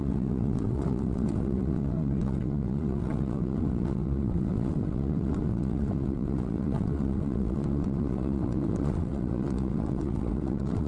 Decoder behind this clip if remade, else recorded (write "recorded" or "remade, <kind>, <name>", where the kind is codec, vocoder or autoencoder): remade, vocoder, WaveNeXt